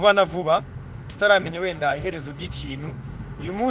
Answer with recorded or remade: remade